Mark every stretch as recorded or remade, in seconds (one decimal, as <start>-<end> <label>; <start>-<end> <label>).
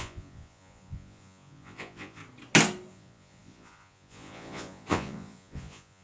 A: 0.0-2.2 remade; 2.2-2.9 recorded; 2.9-6.0 remade